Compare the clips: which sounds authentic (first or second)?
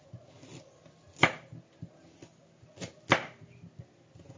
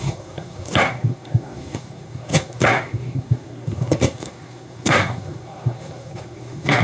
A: first